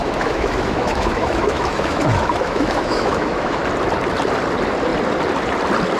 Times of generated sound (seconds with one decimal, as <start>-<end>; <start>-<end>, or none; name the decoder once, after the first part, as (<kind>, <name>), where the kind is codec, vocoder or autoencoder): 0.0-3.6 (autoencoder, DAC-VAE)